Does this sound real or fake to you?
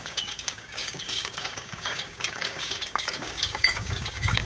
fake